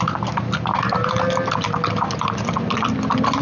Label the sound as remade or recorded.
recorded